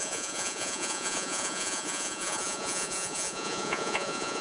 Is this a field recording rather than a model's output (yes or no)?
no